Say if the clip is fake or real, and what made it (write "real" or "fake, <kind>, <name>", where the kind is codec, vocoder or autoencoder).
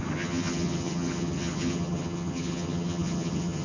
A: fake, vocoder, HiFi-GAN